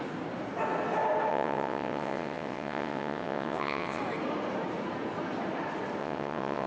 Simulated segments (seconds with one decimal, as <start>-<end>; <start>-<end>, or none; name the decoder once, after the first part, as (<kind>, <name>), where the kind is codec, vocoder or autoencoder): 1.3-4.0 (vocoder, WaveNeXt); 6.0-6.7